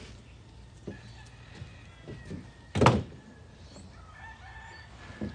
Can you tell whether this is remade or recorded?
recorded